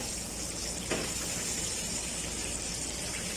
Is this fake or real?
real